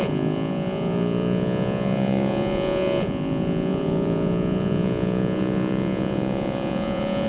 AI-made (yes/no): yes